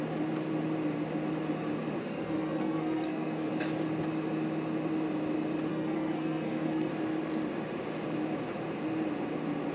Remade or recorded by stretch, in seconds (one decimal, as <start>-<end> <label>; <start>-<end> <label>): 0.0-2.0 recorded; 2.0-3.5 remade; 3.5-5.7 recorded; 5.7-6.9 remade; 6.9-9.7 recorded